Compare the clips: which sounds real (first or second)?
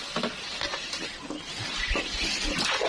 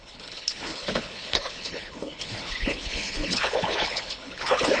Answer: first